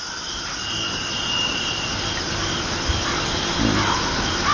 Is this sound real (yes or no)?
yes